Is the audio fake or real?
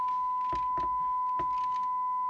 real